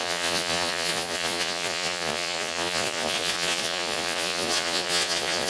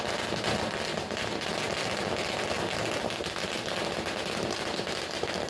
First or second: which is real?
second